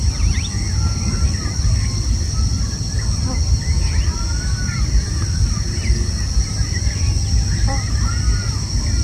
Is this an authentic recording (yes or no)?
yes